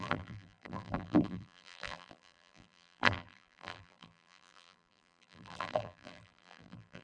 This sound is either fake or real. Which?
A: fake